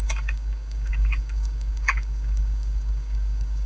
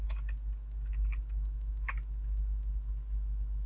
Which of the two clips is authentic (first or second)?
second